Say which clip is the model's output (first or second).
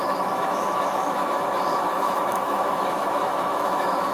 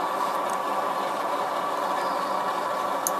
first